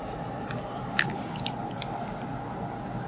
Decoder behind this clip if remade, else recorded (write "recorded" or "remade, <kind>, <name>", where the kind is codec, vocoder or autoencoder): recorded